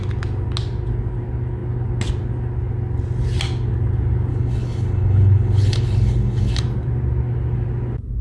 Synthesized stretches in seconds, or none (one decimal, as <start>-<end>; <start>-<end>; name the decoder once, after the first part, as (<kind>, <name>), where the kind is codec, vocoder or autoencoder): 4.3-6.6 (codec, HILCodec)